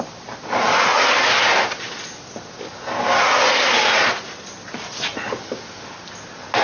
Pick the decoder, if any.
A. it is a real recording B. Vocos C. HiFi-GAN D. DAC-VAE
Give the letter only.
A